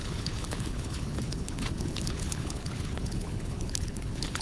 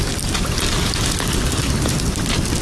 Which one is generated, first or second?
first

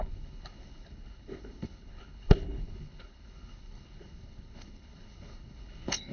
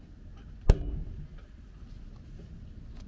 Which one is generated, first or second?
first